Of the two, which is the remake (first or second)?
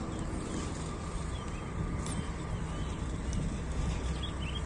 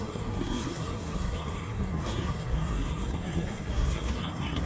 second